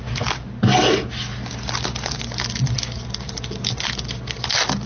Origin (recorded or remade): recorded